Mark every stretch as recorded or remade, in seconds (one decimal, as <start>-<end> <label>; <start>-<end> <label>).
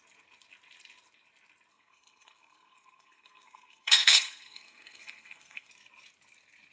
0.0-1.7 recorded; 1.7-5.7 remade; 5.7-6.7 recorded